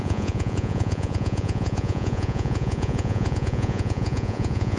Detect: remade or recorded remade